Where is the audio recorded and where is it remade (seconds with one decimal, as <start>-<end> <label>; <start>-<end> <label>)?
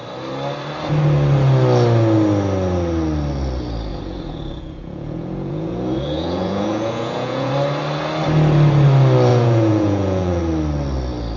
0.0-3.9 recorded; 3.9-7.5 remade; 7.5-9.3 recorded; 9.3-10.4 remade; 10.4-11.4 recorded